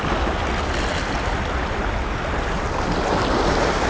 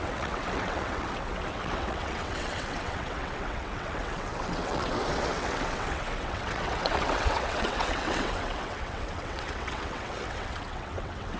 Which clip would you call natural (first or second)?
first